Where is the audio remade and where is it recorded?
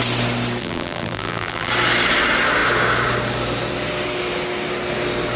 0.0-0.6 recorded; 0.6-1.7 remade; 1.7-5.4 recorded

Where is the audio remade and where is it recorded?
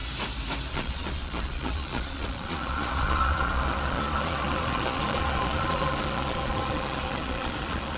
0.0-0.7 recorded; 0.7-8.0 remade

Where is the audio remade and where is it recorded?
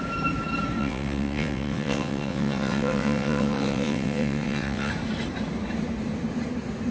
0.0-0.8 recorded; 0.8-4.9 remade; 4.9-6.9 recorded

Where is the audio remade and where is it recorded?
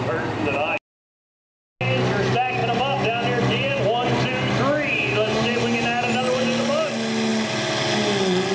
0.0-8.5 recorded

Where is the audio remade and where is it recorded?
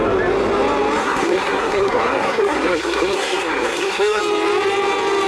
0.0-1.0 recorded; 1.0-4.2 remade; 4.2-5.3 recorded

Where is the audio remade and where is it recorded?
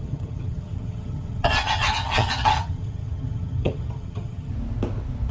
0.0-4.5 remade; 4.5-5.3 recorded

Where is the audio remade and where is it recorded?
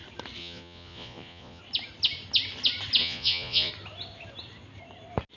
0.0-0.4 recorded; 0.4-1.6 remade; 1.6-3.0 recorded; 3.0-3.7 remade; 3.7-5.4 recorded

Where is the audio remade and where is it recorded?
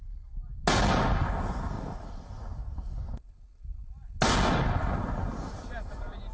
0.0-6.3 recorded